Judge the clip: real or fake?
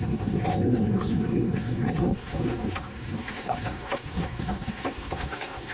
fake